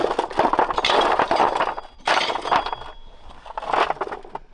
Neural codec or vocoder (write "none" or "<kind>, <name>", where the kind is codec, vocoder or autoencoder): none